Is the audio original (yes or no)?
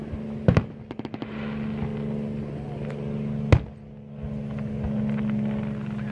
yes